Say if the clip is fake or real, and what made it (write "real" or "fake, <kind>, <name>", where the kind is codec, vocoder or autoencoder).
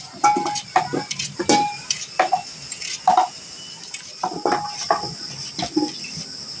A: real